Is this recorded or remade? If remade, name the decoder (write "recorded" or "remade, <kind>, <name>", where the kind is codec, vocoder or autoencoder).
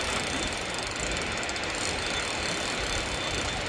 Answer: recorded